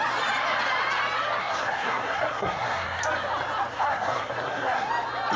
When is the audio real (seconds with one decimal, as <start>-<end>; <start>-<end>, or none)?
0.0-1.4; 3.0-3.7; 4.9-5.4